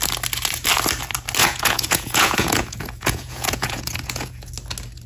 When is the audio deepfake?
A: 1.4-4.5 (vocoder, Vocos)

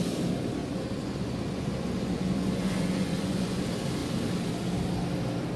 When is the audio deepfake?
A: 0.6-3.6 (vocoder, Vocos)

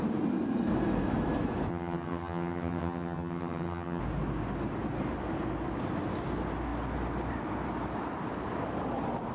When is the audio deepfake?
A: 1.7-4.0 (vocoder, HiFi-GAN)

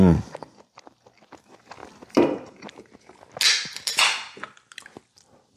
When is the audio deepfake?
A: none

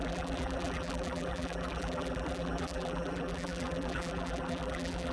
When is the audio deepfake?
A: 0.0-5.1 (vocoder, BigVGAN v2)

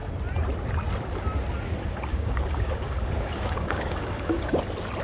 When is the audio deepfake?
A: 2.1-4.6 (codec, DAC)

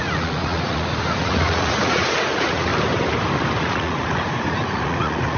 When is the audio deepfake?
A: 0.0-2.7 (vocoder, Vocos); 3.6-5.4